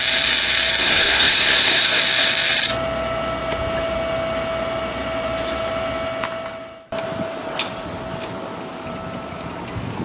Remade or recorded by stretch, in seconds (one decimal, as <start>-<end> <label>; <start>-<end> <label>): 0.0-0.8 recorded; 0.8-2.0 remade; 2.0-10.0 recorded